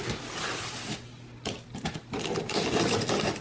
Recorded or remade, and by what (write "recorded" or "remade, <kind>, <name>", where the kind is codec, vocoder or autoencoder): recorded